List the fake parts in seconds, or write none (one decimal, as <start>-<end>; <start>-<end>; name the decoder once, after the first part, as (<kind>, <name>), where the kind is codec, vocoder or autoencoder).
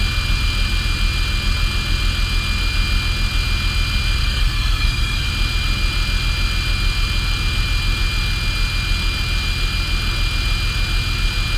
4.2-5.3 (codec, SNAC)